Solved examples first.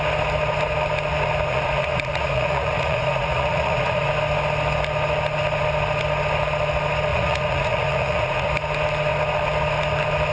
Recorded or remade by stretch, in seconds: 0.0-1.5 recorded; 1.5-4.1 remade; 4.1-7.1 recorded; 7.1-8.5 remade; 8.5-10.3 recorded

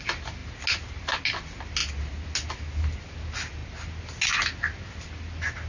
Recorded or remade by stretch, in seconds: 0.0-5.7 recorded